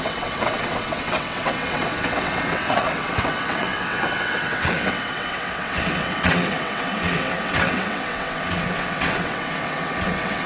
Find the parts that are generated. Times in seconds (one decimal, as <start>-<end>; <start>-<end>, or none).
0.0-10.5